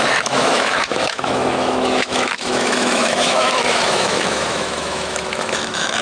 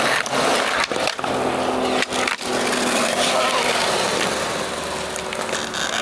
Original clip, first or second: second